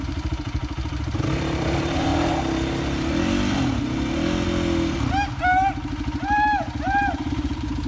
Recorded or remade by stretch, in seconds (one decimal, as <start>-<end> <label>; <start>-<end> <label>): 0.0-2.1 remade; 2.1-6.8 recorded; 6.8-7.9 remade